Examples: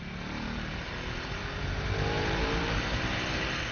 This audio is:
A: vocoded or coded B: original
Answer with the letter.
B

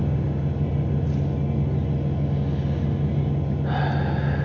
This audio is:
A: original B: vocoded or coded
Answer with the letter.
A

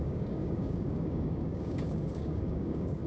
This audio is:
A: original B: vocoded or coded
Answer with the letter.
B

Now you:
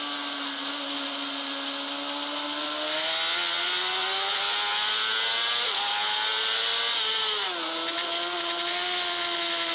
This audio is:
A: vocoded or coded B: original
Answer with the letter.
B